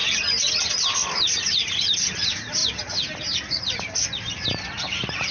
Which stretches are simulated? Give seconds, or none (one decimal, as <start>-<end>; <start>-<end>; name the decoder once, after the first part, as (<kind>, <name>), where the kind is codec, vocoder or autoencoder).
0.0-2.6 (vocoder, BigVGAN v2); 3.5-5.3

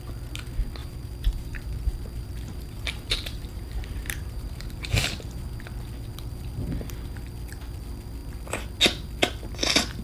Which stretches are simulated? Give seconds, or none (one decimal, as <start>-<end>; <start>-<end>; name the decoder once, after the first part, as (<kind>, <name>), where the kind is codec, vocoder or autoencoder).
0.8-5.6 (vocoder, BigVGAN v2)

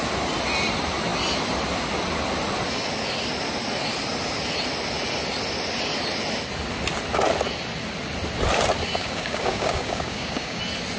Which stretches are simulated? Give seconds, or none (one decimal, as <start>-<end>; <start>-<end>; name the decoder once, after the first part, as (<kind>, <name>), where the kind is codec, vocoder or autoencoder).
9.0-10.6 (codec, DAC)